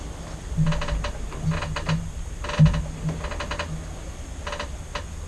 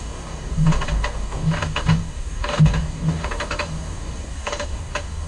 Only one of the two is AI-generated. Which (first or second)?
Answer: second